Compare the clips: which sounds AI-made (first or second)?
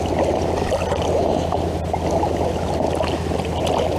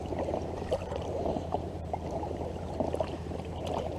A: second